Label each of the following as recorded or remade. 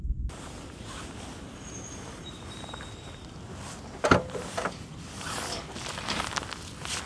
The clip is recorded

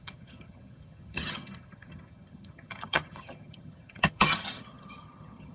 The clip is remade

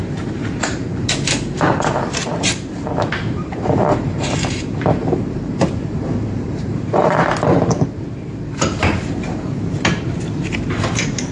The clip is remade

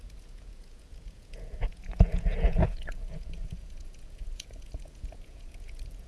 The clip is remade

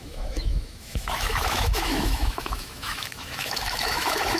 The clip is remade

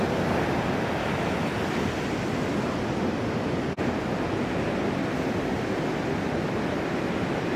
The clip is recorded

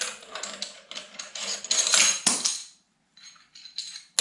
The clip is recorded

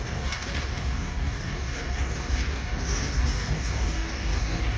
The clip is remade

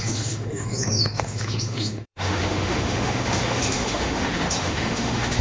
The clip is remade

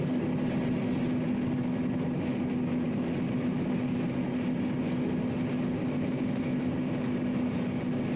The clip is recorded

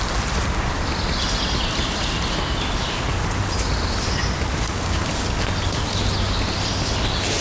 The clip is recorded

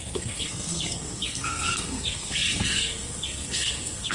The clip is remade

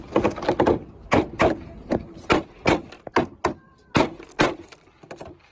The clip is recorded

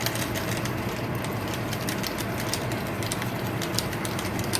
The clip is remade